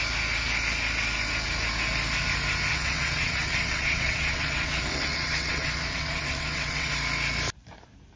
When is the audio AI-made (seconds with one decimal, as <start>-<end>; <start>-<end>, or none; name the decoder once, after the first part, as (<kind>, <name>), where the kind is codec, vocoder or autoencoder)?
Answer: 2.7-6.9 (vocoder, WaveNeXt)

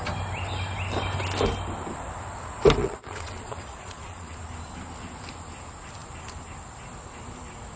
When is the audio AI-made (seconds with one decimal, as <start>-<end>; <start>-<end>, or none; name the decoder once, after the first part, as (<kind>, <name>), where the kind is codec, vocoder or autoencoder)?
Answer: 2.8-4.4 (vocoder, Vocos)

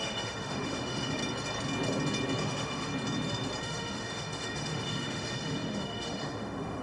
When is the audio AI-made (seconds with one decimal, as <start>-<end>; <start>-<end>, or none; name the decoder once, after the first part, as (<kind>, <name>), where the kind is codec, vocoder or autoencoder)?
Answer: 0.0-1.2 (autoencoder, DAC-VAE); 2.4-2.9; 3.6-6.8

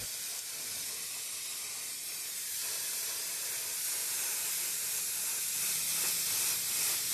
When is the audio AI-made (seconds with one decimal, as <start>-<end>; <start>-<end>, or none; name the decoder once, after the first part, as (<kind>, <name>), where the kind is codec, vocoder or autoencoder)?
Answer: 2.0-3.1 (vocoder, BigVGAN v2); 4.0-5.0

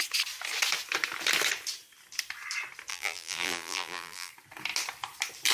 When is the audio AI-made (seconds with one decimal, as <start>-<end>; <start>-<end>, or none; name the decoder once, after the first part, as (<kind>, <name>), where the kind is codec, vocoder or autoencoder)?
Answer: 2.9-4.3 (vocoder, BigVGAN v2)